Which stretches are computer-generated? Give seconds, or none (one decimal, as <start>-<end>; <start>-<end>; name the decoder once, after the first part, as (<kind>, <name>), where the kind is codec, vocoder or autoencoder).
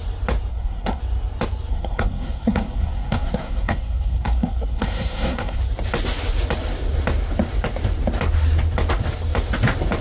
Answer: 0.5-1.0 (codec, SNAC); 1.7-5.6